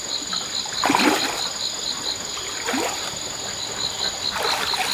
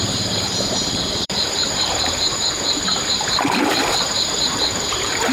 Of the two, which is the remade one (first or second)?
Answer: second